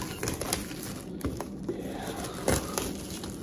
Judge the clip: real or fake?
real